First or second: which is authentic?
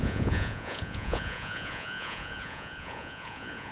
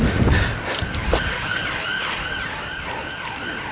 second